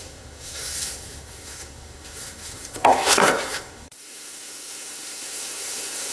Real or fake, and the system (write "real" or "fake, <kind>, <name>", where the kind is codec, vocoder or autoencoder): fake, codec, SNAC